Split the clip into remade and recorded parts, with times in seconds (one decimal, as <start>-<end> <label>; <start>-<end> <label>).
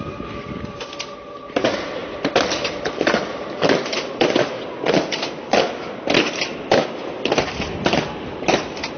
0.0-9.0 recorded